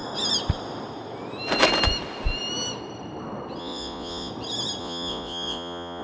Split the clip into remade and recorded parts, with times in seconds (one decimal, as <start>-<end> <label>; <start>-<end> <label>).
0.0-3.6 recorded; 3.6-4.3 remade; 4.3-4.8 recorded; 4.8-6.0 remade

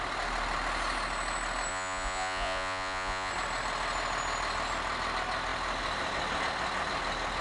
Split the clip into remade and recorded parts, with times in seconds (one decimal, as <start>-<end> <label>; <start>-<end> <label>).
0.0-1.7 recorded; 1.7-3.3 remade; 3.3-7.4 recorded

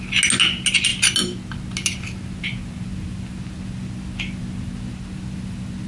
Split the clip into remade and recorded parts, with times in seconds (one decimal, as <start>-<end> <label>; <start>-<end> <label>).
0.0-5.9 recorded